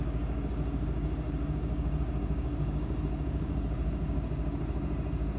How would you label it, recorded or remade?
remade